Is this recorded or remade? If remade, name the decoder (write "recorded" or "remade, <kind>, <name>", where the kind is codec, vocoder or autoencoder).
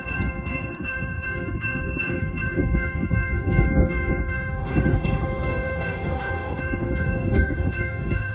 remade, autoencoder, DAC-VAE